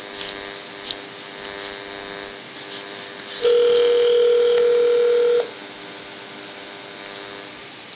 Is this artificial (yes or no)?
no